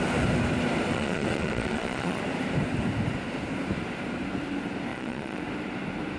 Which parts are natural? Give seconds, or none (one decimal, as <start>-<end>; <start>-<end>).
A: 0.0-0.9; 2.2-4.9; 5.4-6.2